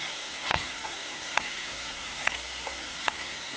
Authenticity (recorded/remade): remade